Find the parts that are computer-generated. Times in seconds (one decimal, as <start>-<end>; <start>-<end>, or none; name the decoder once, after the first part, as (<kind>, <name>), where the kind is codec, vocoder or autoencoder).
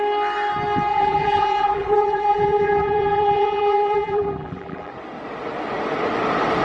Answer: 0.9-4.9 (vocoder, BigVGAN v2)